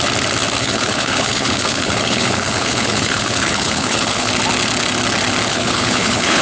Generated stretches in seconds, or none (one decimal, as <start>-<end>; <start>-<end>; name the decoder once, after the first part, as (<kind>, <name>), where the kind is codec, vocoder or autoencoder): 0.6-4.3 (codec, HILCodec); 5.5-6.4

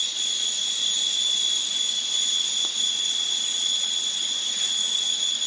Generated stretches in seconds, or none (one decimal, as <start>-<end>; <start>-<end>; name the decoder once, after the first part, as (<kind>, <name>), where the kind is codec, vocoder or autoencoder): 0.0-0.6 (vocoder, WaveNeXt); 2.0-5.5

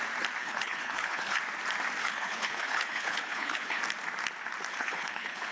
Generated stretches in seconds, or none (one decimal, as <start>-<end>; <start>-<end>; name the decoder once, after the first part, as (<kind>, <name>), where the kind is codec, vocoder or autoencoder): 0.4-1.4 (codec, HILCodec); 2.0-3.8; 4.7-5.5

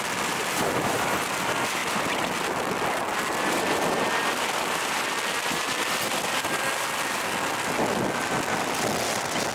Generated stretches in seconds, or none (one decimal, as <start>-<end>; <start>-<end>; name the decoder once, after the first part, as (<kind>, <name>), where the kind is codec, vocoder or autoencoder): 1.8-6.3 (vocoder, BigVGAN v2)